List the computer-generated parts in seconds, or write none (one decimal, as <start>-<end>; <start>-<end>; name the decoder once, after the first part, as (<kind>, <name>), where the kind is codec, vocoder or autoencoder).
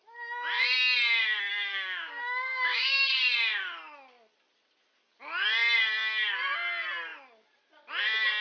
1.5-3.2 (codec, DAC)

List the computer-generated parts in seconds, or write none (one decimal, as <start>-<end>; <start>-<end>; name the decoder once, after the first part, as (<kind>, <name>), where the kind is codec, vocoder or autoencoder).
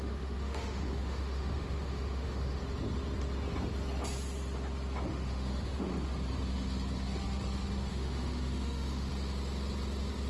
0.0-2.6 (autoencoder, DAC-VAE); 5.1-5.9; 7.9-9.1